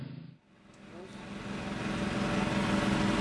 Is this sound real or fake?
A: real